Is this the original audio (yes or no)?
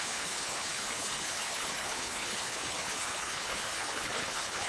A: no